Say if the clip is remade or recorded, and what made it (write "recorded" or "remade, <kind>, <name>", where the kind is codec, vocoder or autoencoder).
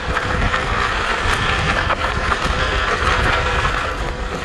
remade, codec, SNAC